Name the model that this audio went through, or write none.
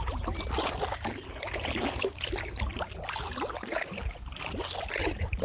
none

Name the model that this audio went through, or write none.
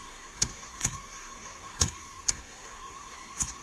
codec, SNAC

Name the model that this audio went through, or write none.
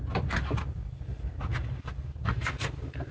none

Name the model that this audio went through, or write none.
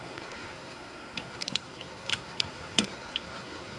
codec, SNAC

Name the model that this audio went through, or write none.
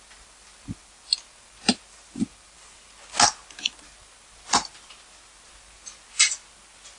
none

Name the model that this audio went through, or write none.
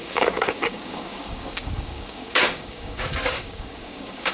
codec, DAC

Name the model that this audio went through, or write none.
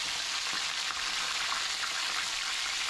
none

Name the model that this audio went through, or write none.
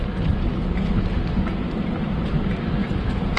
none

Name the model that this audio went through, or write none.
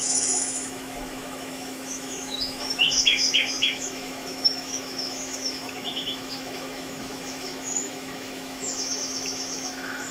autoencoder, DAC-VAE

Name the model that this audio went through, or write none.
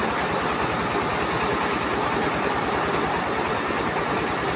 none